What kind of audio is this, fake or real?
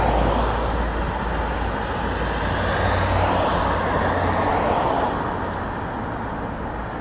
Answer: real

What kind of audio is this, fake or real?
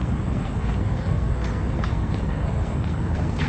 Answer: fake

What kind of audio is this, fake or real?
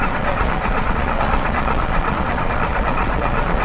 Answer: fake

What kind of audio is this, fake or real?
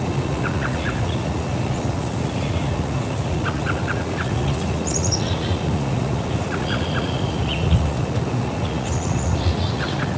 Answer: fake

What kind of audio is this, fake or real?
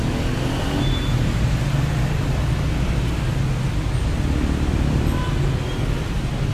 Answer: real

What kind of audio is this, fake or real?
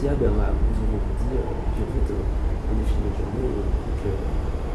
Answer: fake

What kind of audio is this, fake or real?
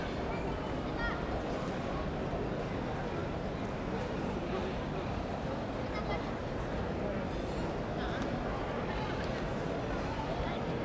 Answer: real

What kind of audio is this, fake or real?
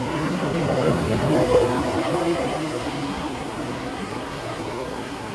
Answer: fake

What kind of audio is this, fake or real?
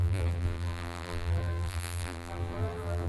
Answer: fake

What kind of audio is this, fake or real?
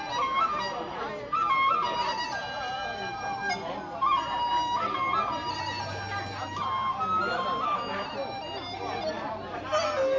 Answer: real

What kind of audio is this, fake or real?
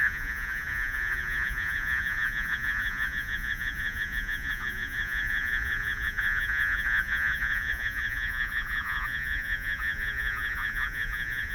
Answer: fake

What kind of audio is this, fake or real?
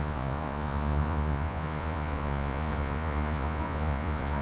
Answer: fake